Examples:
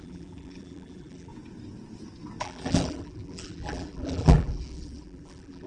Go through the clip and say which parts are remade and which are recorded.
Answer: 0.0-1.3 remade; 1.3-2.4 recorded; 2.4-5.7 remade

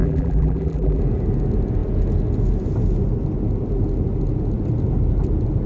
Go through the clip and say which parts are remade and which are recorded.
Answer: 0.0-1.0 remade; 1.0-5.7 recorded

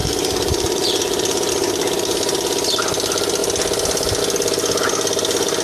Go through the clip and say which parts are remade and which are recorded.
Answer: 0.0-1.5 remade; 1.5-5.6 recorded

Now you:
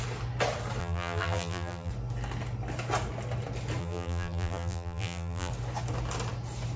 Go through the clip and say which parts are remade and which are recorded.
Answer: 0.0-0.8 recorded; 0.8-1.9 remade; 1.9-3.8 recorded; 3.8-5.5 remade; 5.5-6.8 recorded